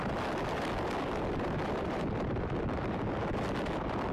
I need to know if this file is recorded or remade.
remade